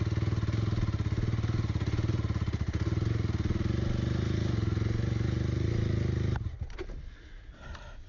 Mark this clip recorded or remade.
recorded